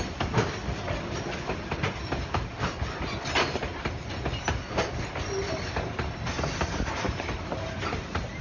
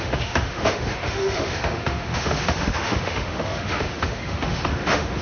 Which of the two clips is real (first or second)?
first